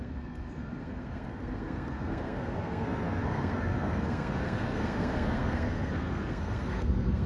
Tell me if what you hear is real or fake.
fake